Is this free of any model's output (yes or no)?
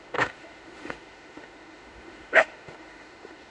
no